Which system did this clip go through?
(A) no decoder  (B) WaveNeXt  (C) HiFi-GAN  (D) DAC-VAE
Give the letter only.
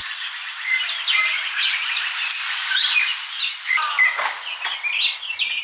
A